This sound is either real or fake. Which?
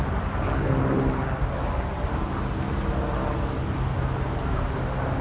real